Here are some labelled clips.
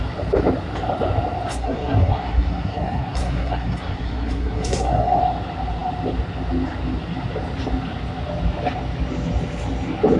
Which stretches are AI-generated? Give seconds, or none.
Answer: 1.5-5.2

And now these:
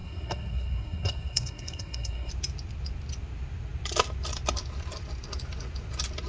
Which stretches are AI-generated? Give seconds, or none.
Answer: 0.0-2.3

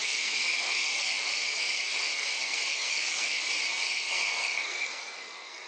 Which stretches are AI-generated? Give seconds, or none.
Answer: 0.0-3.4; 3.8-5.7

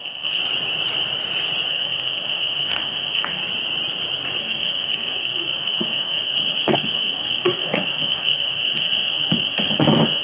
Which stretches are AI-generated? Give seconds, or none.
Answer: 0.0-0.4; 1.7-3.4; 4.4-10.2

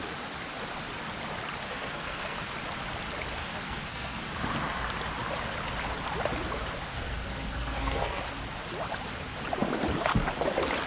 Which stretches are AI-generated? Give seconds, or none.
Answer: 1.7-2.5; 3.4-4.2; 6.9-8.2